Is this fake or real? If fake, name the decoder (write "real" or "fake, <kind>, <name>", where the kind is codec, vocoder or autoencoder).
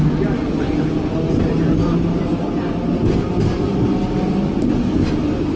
real